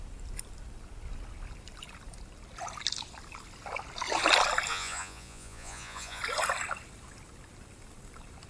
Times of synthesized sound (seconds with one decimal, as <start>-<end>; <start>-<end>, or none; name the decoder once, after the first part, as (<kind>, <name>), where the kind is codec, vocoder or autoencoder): 4.7-6.2 (vocoder, Vocos)